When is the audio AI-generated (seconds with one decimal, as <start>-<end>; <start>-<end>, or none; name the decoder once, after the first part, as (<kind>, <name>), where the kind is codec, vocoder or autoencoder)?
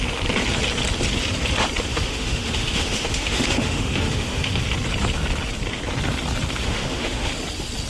1.9-4.6 (autoencoder, DAC-VAE); 6.6-7.3